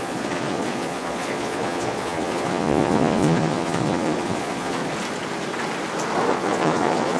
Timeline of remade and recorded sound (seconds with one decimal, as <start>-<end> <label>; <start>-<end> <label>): 0.0-4.8 remade; 4.8-6.3 recorded; 6.3-7.2 remade